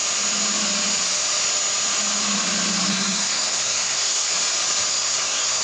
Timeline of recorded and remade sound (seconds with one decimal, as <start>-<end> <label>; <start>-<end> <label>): 0.0-2.9 recorded; 2.9-4.3 remade; 4.3-4.9 recorded; 4.9-5.6 remade